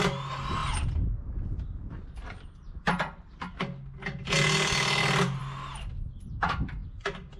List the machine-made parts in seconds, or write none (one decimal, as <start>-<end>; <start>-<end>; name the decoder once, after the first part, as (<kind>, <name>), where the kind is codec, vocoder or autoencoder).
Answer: none